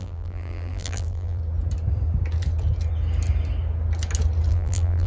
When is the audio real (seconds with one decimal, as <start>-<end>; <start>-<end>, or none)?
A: 1.4-4.5